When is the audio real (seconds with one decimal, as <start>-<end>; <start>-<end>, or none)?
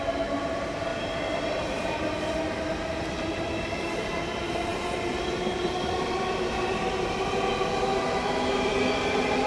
0.0-0.9; 2.2-9.5